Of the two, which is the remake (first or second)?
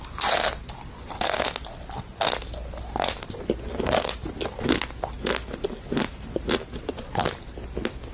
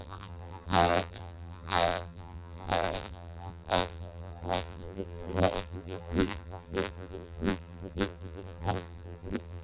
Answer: second